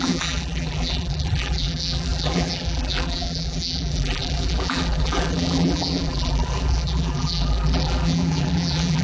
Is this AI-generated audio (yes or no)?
yes